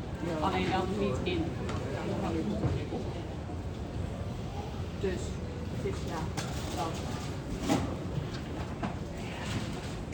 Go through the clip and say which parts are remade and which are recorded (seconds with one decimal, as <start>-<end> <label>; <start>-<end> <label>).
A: 0.0-10.1 remade